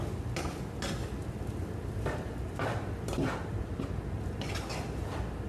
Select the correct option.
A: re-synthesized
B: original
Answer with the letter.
B